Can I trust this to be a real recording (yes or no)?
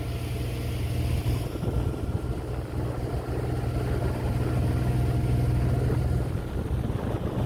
yes